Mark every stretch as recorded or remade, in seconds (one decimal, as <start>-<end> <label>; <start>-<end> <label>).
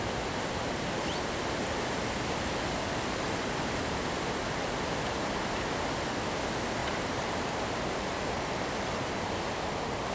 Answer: 0.0-6.8 recorded; 6.8-9.2 remade; 9.2-10.1 recorded